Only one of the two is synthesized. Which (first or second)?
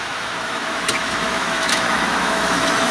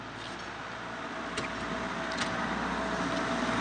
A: first